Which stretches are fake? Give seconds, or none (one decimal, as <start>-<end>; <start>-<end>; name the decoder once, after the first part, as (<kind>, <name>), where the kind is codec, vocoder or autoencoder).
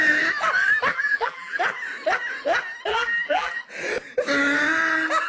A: 0.9-1.6 (vocoder, BigVGAN v2); 2.9-3.6